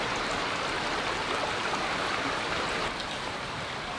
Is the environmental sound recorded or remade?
recorded